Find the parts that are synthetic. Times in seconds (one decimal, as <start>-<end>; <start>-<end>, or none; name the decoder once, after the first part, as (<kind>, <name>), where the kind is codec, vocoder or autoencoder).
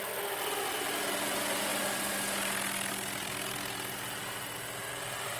none